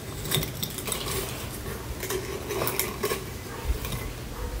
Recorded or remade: recorded